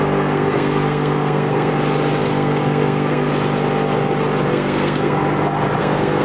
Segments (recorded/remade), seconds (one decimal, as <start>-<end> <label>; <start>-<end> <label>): 0.0-1.7 remade; 1.7-2.2 recorded; 2.2-3.3 remade; 3.3-4.5 recorded; 4.5-5.2 remade; 5.2-5.8 recorded; 5.8-6.2 remade